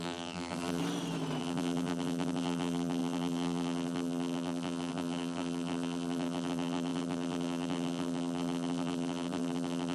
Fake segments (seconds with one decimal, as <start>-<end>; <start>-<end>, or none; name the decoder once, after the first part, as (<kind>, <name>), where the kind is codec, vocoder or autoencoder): 0.0-0.8 (vocoder, BigVGAN v2); 1.4-9.9